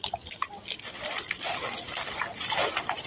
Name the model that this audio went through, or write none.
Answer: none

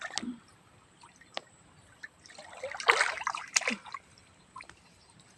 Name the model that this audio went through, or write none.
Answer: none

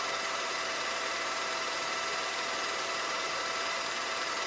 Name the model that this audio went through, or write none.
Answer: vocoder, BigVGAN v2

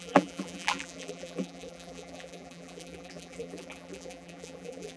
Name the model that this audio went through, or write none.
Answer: vocoder, BigVGAN v2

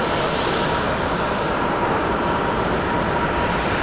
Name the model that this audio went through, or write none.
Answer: none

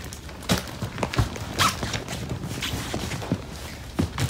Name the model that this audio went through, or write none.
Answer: vocoder, BigVGAN v2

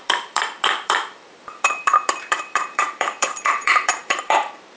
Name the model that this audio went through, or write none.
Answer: vocoder, BigVGAN v2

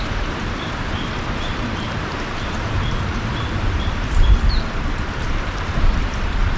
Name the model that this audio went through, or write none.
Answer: vocoder, BigVGAN v2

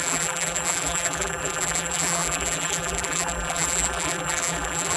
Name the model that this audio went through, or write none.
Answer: vocoder, BigVGAN v2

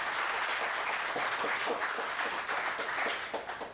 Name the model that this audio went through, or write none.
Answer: vocoder, BigVGAN v2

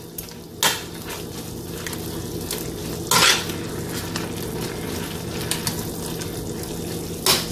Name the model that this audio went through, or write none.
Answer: none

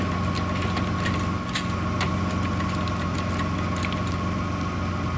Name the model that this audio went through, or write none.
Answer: none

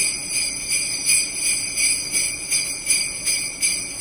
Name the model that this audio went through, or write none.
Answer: vocoder, BigVGAN v2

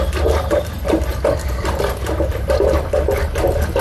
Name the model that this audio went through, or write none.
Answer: none